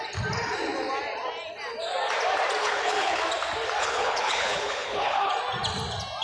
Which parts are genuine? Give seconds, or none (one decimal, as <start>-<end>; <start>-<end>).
0.0-2.6; 3.2-3.8; 5.3-6.2